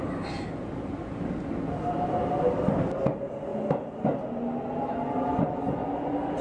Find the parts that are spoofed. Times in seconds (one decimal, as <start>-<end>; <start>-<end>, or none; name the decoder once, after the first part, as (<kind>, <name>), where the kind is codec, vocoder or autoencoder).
none